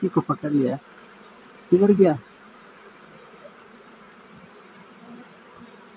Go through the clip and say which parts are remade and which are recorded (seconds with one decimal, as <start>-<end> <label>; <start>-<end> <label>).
0.0-0.7 recorded; 0.7-4.1 remade; 4.1-6.0 recorded